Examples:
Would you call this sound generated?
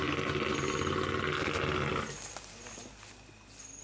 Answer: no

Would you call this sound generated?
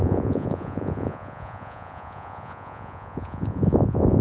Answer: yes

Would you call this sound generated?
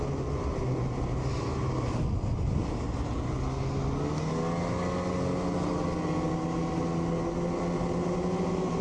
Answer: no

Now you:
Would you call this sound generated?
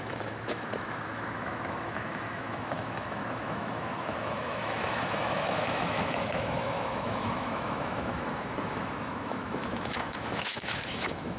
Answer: yes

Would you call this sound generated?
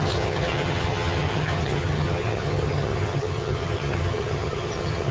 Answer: yes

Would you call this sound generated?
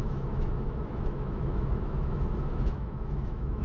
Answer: yes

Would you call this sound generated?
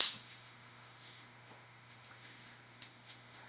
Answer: yes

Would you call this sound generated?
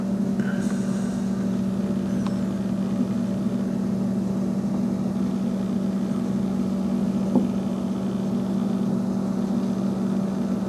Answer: no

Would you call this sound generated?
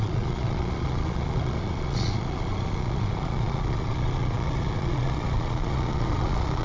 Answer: yes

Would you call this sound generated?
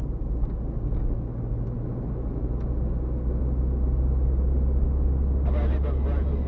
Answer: no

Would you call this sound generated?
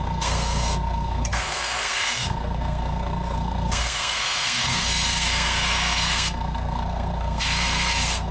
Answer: yes